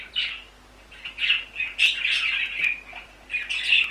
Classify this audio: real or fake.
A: real